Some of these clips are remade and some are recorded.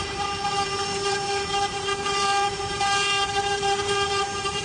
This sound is remade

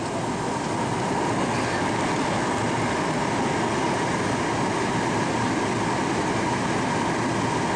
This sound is recorded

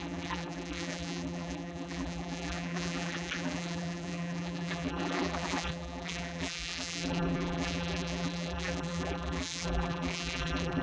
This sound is remade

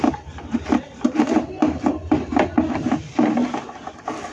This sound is remade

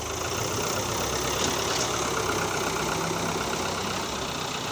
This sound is recorded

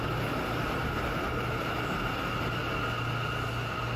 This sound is recorded